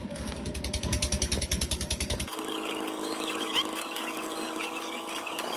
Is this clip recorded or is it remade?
remade